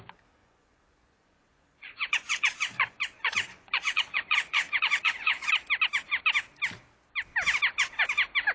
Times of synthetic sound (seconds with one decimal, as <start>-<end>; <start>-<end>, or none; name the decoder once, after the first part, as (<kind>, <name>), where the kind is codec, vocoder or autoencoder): 0.4-5.5 (vocoder, Vocos)

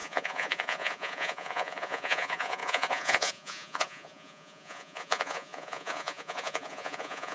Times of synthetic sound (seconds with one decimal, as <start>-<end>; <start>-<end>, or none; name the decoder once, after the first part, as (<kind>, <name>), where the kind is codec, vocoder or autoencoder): 0.0-7.3 (vocoder, Vocos)

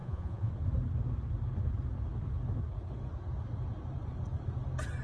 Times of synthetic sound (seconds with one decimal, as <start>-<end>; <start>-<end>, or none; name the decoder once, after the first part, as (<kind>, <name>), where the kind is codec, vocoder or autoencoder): 0.0-0.5 (vocoder, Vocos)

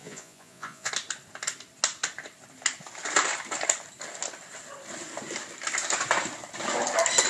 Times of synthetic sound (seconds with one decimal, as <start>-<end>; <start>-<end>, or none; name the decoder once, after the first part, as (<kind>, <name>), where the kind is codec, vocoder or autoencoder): 0.0-0.9 (vocoder, Vocos)